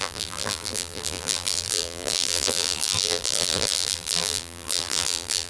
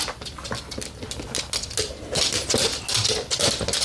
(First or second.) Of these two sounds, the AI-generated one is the first